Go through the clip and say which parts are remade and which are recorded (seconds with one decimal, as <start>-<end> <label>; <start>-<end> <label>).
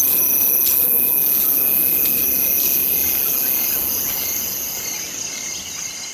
0.0-6.1 recorded